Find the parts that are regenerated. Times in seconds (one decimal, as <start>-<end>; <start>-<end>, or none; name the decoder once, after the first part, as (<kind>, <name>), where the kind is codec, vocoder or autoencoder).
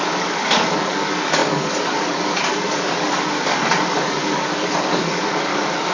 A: 0.0-5.9 (codec, DAC)